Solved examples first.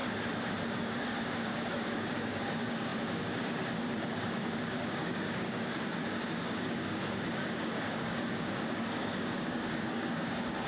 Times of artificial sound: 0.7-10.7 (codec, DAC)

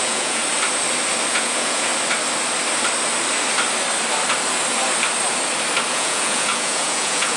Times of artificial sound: 0.0-0.4 (vocoder, Vocos); 1.3-1.9; 5.9-7.4

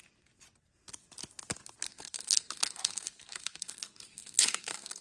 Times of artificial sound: 1.9-5.0 (codec, SNAC)

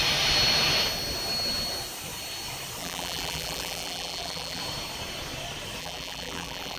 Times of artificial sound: 2.8-4.6 (vocoder, BigVGAN v2); 5.8-6.8

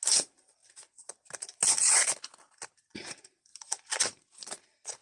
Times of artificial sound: none

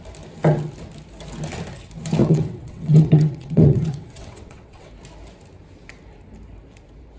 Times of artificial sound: 2.2-4.9 (vocoder, WaveNeXt)

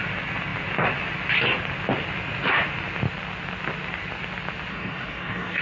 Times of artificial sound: 4.7-5.6 (codec, DAC)

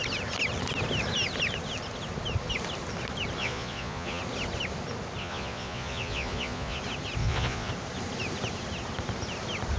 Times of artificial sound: 3.4-4.2 (vocoder, Vocos); 5.2-6.8; 7.2-7.7